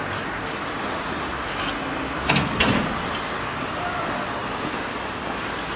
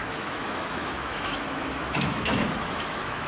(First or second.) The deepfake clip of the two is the second